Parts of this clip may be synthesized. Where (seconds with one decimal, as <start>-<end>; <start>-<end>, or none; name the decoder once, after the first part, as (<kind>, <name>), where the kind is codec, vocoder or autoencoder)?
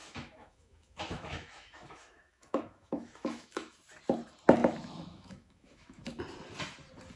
0.0-3.8 (autoencoder, DAC-VAE); 4.6-6.2